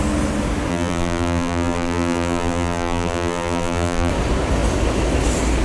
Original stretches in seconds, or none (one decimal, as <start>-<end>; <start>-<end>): 0.0-0.7; 4.1-5.6